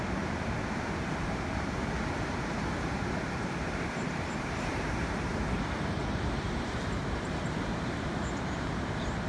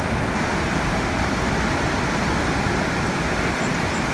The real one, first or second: second